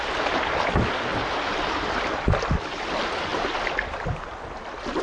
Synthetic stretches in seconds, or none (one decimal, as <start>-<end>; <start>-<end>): 1.1-2.2; 3.3-3.8; 4.3-5.0